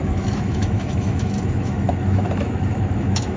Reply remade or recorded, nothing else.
remade